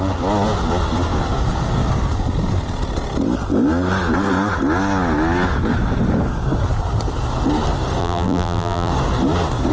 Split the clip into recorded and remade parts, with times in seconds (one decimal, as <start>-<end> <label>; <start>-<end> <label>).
0.0-8.0 recorded; 8.0-8.9 remade; 8.9-9.7 recorded